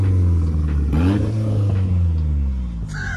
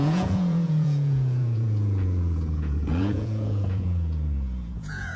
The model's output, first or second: second